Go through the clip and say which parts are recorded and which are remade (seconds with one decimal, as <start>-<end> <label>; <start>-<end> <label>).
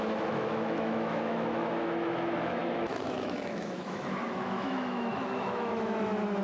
0.0-6.4 remade